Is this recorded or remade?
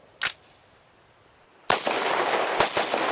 recorded